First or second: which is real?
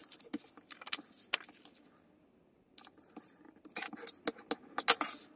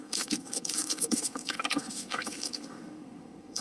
first